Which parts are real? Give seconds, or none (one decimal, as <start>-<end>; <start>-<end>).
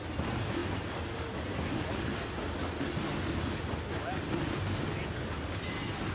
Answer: 0.0-6.1